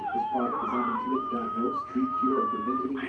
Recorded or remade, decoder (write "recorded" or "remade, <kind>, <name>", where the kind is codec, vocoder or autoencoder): recorded